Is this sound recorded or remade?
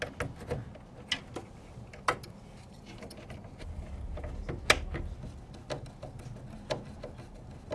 recorded